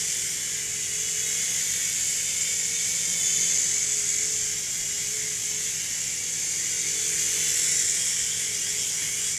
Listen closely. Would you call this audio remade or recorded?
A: recorded